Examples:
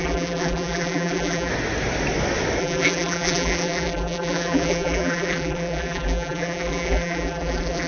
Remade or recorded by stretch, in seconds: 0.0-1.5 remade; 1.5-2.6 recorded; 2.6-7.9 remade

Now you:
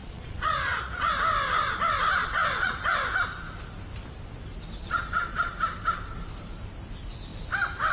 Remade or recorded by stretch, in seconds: 0.0-1.1 remade; 1.1-2.2 recorded; 2.2-2.8 remade; 2.8-4.8 recorded; 4.8-5.5 remade; 5.5-7.9 recorded